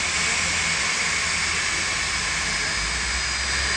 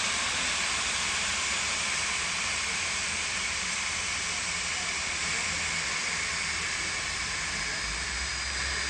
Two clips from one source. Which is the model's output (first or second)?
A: second